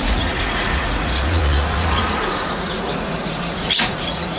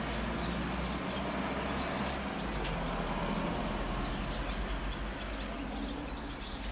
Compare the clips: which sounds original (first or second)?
second